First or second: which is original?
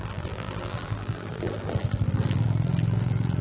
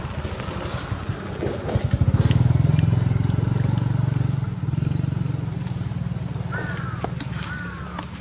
second